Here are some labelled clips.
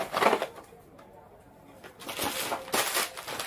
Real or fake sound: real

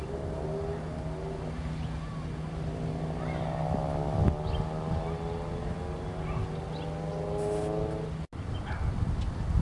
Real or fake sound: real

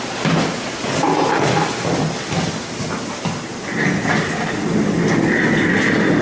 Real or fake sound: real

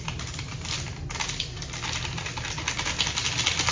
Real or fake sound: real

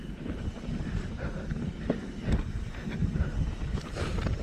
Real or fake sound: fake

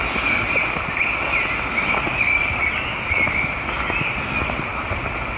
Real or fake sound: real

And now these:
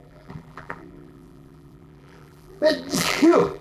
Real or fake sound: fake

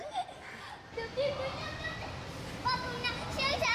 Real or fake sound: real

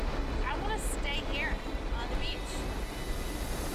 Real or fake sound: real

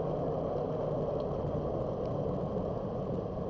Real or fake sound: real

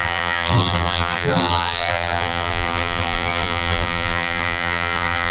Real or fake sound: fake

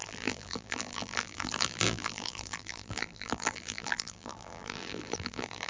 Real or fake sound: fake